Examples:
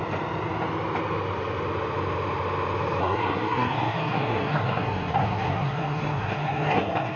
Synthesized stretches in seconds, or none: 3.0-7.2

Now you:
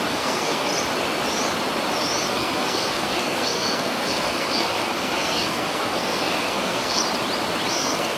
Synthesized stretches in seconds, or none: 0.0-0.7; 2.3-7.0; 7.7-8.2

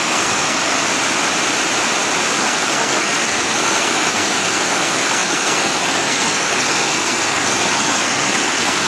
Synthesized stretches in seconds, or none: 0.0-0.9; 2.3-8.9

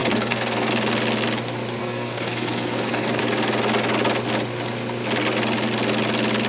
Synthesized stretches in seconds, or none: 0.0-0.7; 1.8-3.2

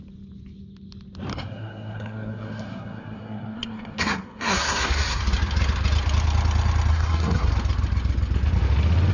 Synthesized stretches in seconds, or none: 1.3-5.2; 6.9-7.5